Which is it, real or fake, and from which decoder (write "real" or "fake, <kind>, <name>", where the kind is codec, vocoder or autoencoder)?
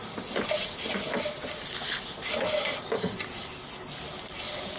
real